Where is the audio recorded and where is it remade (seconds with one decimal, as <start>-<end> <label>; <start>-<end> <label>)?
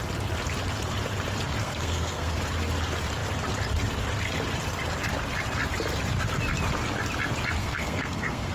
0.0-1.6 recorded; 1.6-2.4 remade; 2.4-7.6 recorded; 7.6-8.5 remade